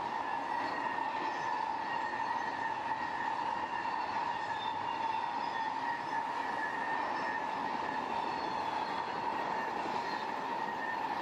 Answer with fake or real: real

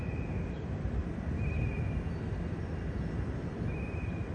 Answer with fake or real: real